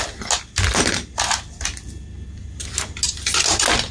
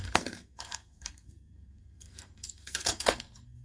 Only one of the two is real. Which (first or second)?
first